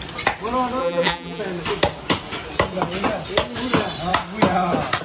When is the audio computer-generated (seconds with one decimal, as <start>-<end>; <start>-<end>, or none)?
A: 0.8-1.4